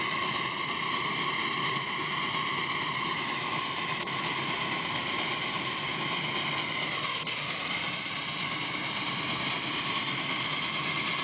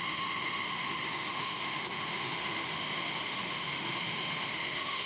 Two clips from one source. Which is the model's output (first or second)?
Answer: second